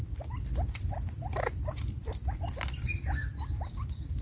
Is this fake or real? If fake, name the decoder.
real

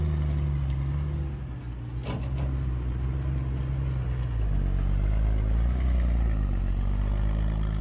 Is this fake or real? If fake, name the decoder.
real